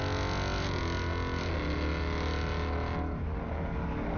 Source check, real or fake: real